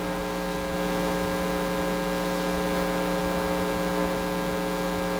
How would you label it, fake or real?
real